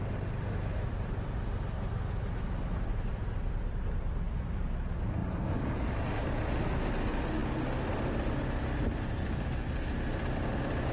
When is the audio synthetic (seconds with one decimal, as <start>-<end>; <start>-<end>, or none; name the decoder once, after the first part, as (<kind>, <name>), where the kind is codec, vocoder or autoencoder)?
none